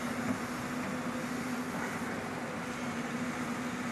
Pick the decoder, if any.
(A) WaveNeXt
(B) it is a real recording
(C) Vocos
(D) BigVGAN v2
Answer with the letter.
B